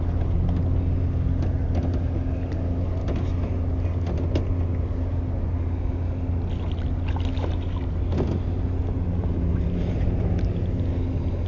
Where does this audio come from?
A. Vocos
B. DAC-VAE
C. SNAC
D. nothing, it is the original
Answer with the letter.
D